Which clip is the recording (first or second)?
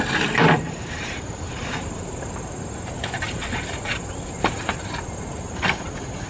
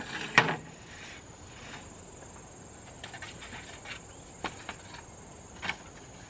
second